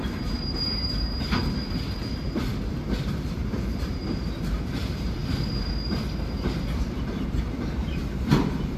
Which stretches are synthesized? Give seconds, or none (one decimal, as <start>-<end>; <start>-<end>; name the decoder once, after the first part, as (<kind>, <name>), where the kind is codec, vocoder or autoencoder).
0.0-1.4 (vocoder, BigVGAN v2); 2.0-5.2; 6.2-8.8